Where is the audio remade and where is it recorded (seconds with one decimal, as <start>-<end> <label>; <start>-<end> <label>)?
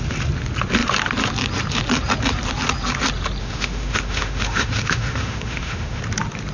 0.0-3.4 recorded; 3.4-6.0 remade; 6.0-6.5 recorded